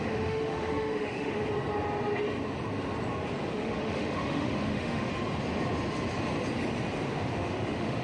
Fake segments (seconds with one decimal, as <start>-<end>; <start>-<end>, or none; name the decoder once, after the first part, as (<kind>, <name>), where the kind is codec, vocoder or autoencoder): 0.0-1.4 (autoencoder, DAC-VAE); 3.5-5.1; 7.3-8.0